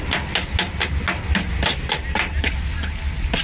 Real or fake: real